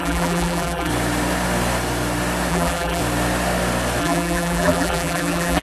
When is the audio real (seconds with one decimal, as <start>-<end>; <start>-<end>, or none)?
0.9-2.5; 3.0-4.0